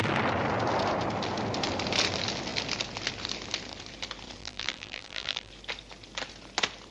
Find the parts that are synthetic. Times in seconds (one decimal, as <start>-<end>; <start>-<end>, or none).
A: 4.4-5.5